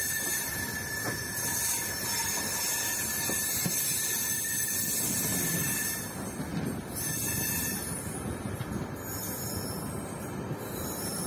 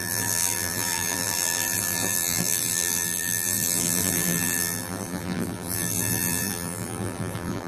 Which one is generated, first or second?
second